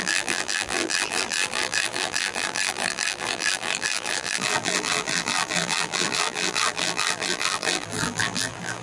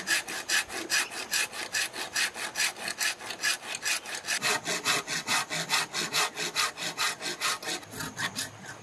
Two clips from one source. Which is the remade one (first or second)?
first